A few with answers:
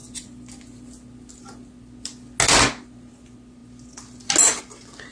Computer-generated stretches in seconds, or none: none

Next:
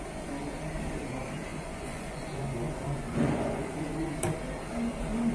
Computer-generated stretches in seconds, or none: 1.5-4.1 (vocoder, Vocos)